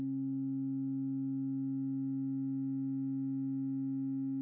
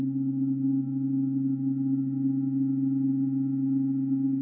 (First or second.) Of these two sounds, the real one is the first